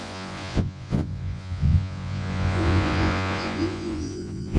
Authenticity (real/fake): fake